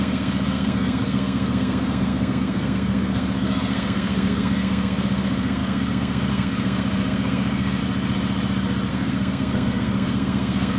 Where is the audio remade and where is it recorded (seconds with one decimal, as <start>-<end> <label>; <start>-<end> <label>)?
0.0-7.8 remade; 7.8-8.9 recorded; 8.9-10.8 remade